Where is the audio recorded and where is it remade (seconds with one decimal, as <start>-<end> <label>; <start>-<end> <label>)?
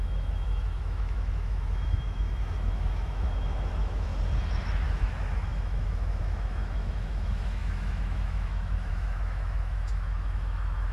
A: 0.0-4.1 remade; 4.1-4.9 recorded; 4.9-10.9 remade